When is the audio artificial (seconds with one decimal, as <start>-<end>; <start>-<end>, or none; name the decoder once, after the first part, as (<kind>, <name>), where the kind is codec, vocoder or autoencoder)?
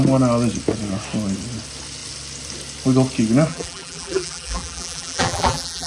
3.5-5.9 (vocoder, BigVGAN v2)